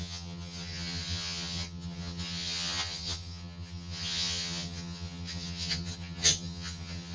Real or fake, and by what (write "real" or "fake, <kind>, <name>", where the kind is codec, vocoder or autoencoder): fake, vocoder, HiFi-GAN